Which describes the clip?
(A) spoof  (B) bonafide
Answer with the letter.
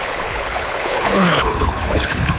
A